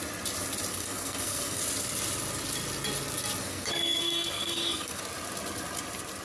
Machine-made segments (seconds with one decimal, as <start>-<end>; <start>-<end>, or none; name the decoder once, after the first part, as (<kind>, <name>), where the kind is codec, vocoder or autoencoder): 0.7-1.6 (codec, SNAC); 3.4-5.0